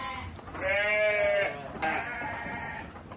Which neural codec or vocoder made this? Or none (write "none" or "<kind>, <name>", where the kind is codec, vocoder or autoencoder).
none